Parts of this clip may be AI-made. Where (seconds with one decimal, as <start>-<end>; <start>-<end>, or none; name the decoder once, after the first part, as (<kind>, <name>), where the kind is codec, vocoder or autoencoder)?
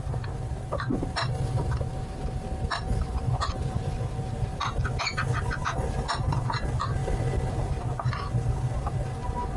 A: none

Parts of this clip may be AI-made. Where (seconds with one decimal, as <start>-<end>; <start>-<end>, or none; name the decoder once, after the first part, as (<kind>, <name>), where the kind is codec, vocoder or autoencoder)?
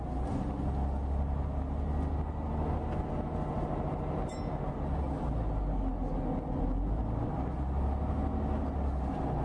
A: none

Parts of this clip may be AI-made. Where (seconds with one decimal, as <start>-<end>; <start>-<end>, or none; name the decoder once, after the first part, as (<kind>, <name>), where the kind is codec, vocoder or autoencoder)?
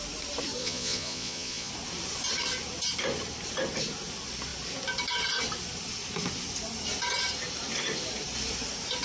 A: 0.6-1.7 (vocoder, Vocos)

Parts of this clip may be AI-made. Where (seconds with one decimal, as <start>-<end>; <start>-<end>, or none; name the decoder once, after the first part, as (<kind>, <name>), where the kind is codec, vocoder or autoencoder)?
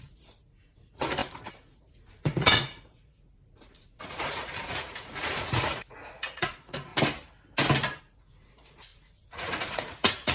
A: 0.0-6.9 (vocoder, Vocos); 8.0-10.3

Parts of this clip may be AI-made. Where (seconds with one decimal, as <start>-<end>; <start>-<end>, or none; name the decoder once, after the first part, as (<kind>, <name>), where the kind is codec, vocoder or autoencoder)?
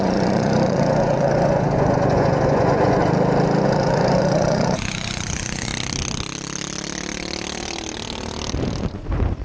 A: 0.0-3.0 (vocoder, Vocos); 3.6-5.7; 8.8-9.4